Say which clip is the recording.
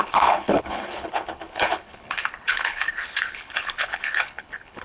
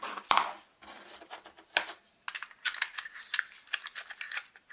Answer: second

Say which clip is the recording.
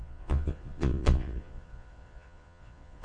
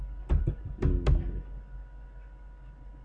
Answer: second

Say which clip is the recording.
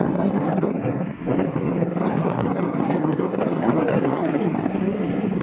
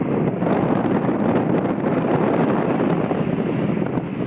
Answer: second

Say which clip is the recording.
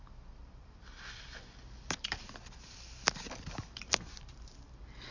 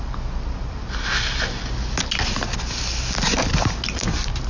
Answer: second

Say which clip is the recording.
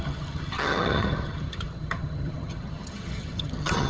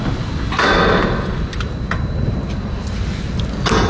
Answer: second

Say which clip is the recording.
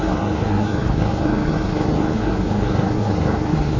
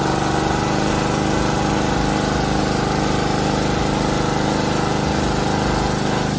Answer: second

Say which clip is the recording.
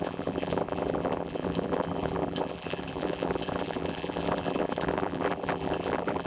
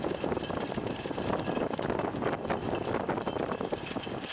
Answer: second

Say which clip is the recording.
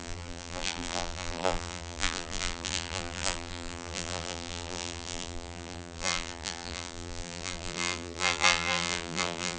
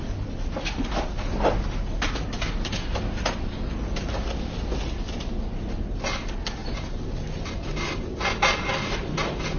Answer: second